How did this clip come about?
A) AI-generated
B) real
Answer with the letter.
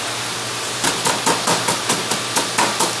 B